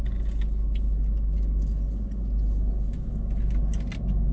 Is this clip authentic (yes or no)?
yes